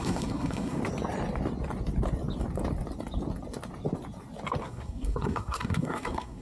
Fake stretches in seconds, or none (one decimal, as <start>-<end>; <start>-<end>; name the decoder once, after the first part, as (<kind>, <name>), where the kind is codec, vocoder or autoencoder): 0.0-0.8 (codec, SNAC); 4.6-6.4